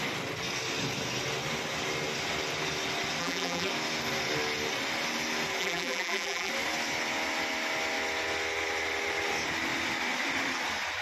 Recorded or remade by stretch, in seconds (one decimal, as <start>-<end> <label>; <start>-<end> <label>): 0.0-3.2 recorded; 3.2-3.7 remade; 3.7-5.6 recorded; 5.6-6.5 remade; 6.5-11.0 recorded